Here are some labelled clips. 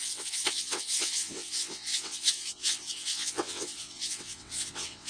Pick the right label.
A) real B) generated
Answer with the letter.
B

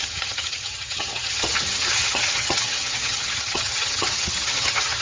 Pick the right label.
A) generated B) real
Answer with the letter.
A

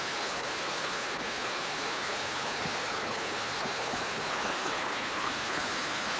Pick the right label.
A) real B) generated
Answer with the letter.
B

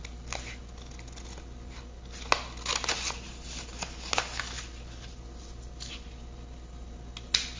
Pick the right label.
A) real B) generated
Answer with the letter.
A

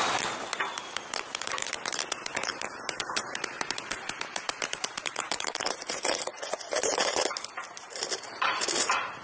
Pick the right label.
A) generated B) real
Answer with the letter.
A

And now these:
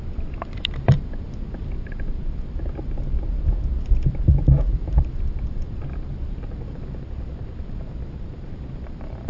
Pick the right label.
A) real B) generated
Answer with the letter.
B